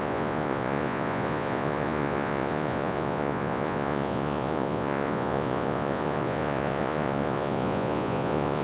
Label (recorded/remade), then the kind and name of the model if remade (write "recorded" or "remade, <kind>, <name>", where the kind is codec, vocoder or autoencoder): remade, vocoder, Vocos